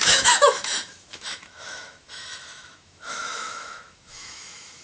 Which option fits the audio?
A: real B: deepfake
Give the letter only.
B